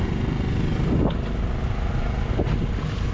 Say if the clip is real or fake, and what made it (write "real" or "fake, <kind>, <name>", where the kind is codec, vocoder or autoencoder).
real